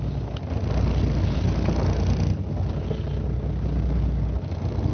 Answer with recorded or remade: recorded